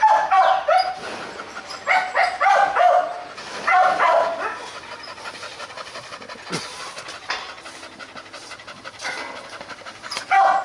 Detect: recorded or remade recorded